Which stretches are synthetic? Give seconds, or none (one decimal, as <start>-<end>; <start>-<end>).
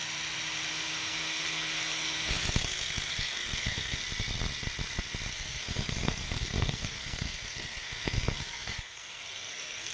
0.7-4.0; 5.3-9.9